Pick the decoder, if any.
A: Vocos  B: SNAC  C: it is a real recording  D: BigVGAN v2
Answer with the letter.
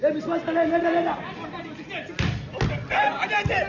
C